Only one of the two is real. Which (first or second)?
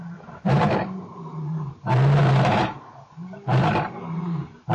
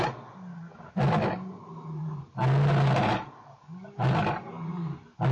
second